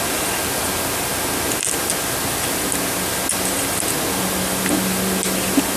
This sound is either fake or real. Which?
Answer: real